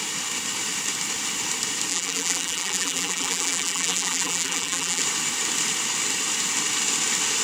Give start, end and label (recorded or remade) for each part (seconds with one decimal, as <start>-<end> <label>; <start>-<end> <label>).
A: 0.0-1.9 recorded; 1.9-5.0 remade; 5.0-7.4 recorded